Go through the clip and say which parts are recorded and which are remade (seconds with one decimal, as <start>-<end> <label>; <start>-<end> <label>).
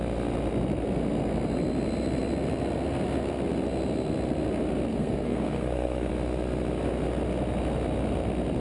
0.0-4.9 recorded; 4.9-6.1 remade; 6.1-8.6 recorded